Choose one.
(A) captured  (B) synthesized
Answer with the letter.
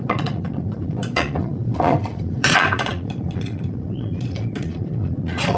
B